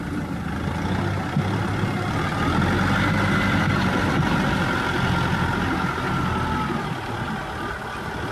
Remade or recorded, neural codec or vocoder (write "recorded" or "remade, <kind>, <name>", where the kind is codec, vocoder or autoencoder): recorded